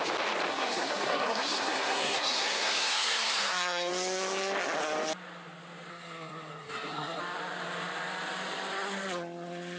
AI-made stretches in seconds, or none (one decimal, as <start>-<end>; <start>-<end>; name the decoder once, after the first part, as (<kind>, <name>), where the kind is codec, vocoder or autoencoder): 0.5-3.9 (codec, SNAC); 5.9-7.2